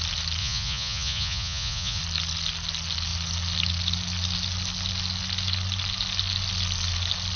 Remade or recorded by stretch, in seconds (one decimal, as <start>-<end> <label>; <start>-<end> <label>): 0.0-0.4 recorded; 0.4-2.0 remade; 2.0-7.4 recorded